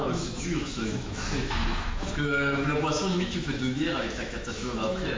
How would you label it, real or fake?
fake